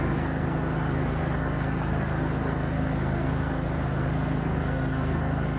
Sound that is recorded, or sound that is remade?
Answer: remade